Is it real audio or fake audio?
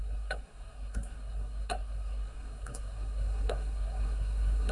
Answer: fake